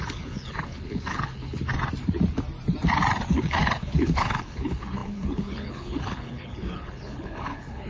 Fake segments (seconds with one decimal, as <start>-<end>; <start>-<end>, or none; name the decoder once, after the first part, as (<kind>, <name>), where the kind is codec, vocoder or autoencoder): 0.0-1.7 (codec, HILCodec); 3.3-7.9